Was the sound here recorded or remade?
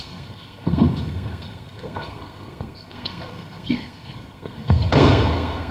remade